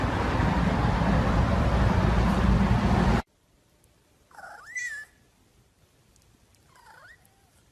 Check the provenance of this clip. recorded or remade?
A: remade